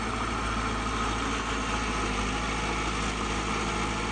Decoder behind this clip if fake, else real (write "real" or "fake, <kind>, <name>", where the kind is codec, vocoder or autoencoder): real